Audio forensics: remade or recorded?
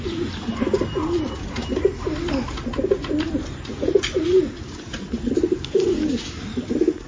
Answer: recorded